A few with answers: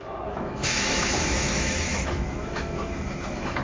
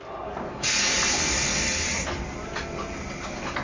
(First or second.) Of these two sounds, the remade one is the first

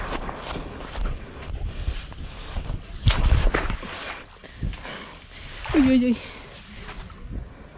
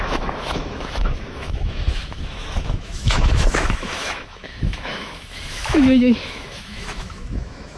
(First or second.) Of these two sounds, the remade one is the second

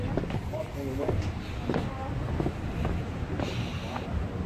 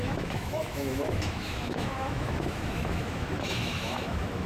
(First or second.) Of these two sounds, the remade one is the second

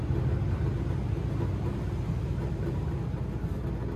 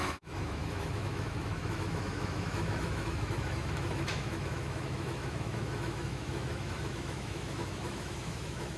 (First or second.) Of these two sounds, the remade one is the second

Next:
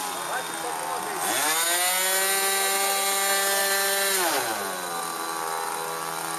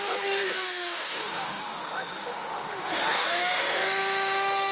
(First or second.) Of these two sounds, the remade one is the second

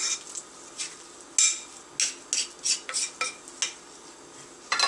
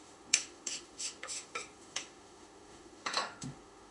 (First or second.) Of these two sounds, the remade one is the second